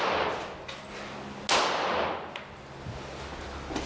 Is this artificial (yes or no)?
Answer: no